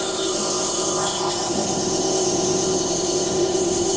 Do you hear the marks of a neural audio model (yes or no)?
yes